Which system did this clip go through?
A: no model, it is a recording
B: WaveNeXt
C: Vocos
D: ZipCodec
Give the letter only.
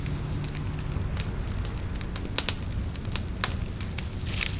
A